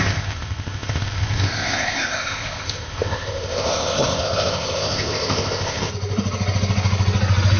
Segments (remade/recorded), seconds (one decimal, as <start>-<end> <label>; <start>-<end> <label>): 0.0-5.9 remade; 5.9-7.6 recorded